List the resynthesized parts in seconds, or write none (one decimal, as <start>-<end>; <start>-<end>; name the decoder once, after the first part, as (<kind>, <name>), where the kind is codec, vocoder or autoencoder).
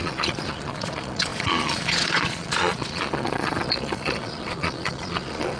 0.0-5.6 (vocoder, Vocos)